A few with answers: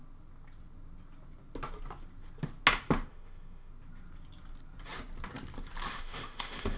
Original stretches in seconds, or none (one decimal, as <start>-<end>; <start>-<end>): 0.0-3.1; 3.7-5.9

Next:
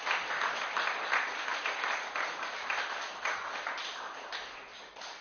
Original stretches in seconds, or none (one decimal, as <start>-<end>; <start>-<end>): 0.0-5.2

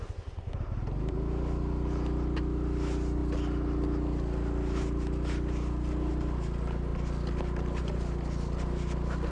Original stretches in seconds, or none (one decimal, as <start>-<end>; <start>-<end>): 0.0-9.3